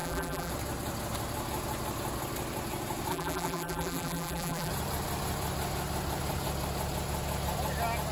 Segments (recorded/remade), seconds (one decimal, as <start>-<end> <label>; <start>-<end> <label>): 0.0-0.5 remade; 0.5-3.1 recorded; 3.1-4.7 remade; 4.7-8.1 recorded